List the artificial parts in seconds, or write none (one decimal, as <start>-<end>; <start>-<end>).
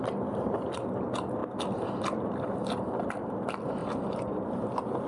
none